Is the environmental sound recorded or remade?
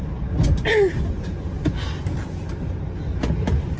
recorded